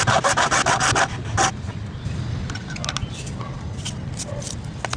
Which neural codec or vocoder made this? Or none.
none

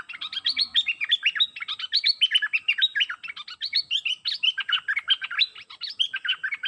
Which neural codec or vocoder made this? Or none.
none